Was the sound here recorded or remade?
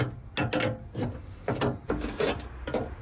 recorded